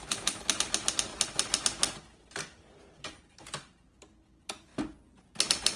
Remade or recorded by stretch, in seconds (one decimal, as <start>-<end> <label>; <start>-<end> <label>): 0.0-5.8 recorded